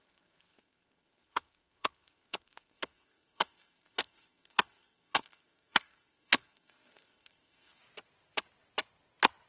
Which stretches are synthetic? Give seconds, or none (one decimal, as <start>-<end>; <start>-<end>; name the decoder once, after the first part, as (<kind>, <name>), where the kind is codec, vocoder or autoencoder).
0.0-7.8 (codec, SNAC)